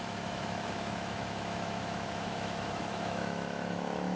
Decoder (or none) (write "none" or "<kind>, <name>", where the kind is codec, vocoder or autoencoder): autoencoder, DAC-VAE